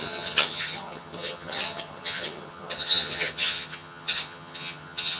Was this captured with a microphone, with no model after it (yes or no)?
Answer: no